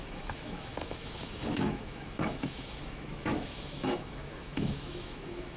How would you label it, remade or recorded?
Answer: remade